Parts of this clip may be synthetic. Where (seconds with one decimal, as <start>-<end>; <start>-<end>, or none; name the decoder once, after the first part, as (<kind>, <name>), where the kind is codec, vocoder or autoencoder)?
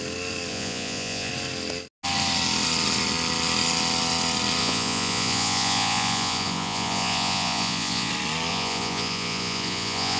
0.5-1.3 (vocoder, Vocos); 4.6-8.1; 8.5-10.2